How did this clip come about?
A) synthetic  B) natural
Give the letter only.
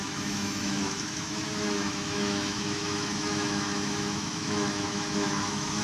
A